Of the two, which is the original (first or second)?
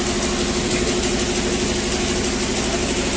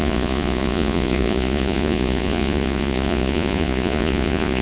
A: first